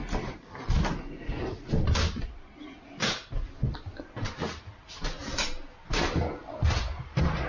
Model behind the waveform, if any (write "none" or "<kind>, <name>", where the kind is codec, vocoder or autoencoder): none